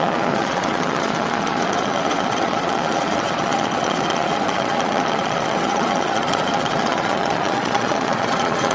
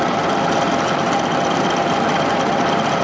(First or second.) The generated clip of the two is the first